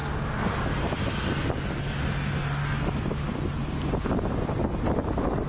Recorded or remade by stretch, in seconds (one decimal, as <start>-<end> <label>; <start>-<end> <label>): 0.0-5.5 recorded